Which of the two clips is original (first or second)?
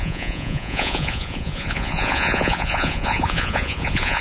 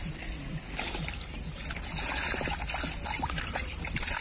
second